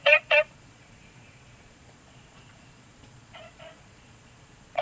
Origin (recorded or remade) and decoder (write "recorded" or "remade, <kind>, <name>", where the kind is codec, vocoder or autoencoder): remade, vocoder, Vocos